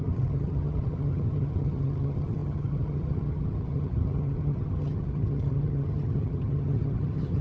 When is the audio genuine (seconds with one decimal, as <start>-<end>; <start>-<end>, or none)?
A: none